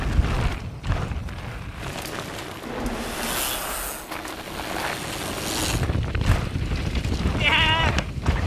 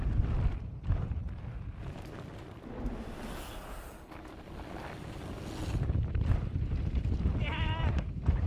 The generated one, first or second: second